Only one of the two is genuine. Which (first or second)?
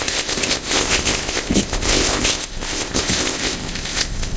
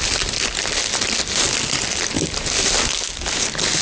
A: second